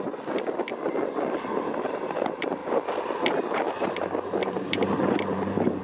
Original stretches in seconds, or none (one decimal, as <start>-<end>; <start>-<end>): 0.0-4.4